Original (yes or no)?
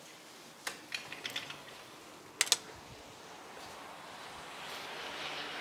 yes